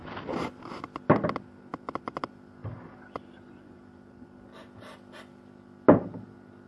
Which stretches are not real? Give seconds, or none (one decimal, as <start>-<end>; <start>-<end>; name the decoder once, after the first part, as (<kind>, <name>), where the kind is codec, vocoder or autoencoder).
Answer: none